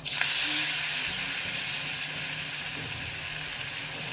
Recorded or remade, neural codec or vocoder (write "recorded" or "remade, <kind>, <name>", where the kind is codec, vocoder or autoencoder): recorded